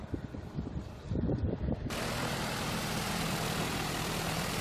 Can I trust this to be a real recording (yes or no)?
no